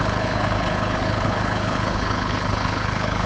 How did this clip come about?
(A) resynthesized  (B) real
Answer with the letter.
A